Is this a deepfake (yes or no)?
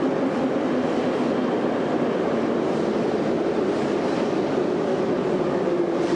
no